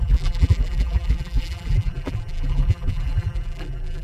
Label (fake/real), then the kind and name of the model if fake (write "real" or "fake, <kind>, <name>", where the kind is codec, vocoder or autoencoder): fake, vocoder, BigVGAN v2